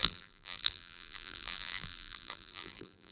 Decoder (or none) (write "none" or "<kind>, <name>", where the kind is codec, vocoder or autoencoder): vocoder, BigVGAN v2